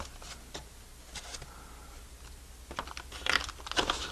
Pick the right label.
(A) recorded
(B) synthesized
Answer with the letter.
A